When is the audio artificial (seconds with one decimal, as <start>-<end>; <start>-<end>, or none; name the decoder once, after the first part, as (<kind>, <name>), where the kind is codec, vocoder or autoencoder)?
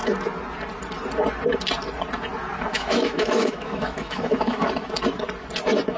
2.7-4.7 (autoencoder, DAC-VAE)